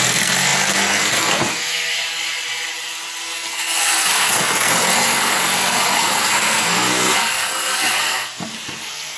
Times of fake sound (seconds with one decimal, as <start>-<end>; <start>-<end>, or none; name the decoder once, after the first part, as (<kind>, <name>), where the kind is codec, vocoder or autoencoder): 0.0-1.9 (codec, SNAC); 3.2-9.2